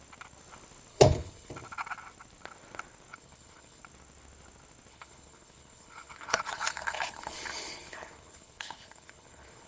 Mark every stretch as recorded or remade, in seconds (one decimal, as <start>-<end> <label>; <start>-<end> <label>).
0.0-0.9 recorded; 0.9-1.5 remade; 1.5-3.1 recorded; 3.1-3.8 remade; 3.8-4.9 recorded; 4.9-9.7 remade